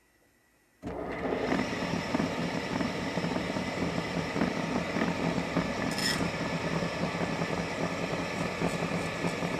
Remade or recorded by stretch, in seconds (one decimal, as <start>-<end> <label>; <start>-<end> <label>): 0.0-2.4 recorded; 2.4-4.3 remade; 4.3-6.0 recorded; 6.0-7.2 remade; 7.2-9.6 recorded